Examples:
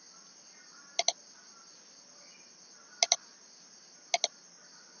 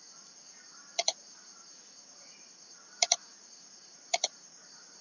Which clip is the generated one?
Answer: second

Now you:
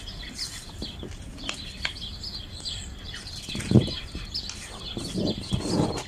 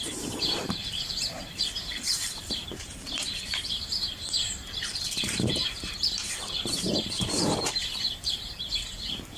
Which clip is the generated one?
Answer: second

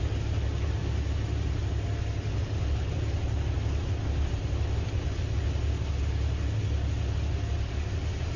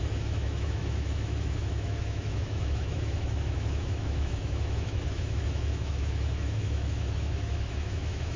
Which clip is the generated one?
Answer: second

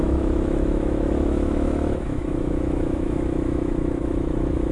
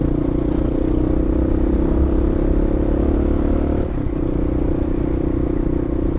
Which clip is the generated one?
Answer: first